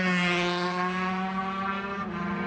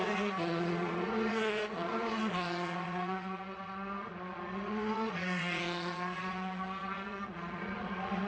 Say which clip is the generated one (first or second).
second